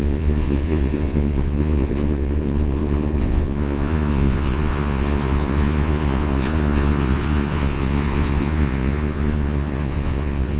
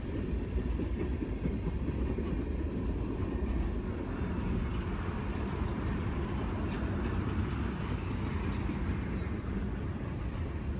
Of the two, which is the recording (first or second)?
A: second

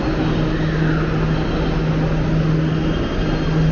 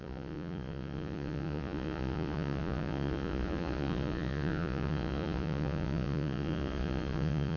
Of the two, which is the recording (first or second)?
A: first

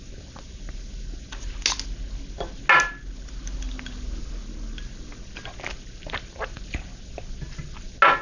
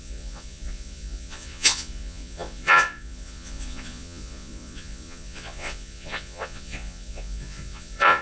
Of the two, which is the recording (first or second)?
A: first